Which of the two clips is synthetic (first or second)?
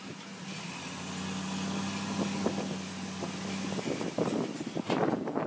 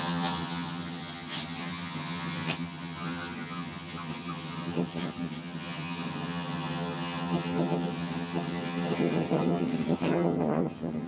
second